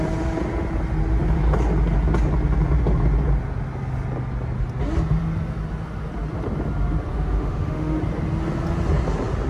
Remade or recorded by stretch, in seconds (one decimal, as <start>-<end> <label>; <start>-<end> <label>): 0.0-7.1 recorded; 7.1-8.0 remade; 8.0-9.5 recorded